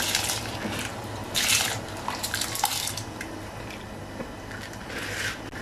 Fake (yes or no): no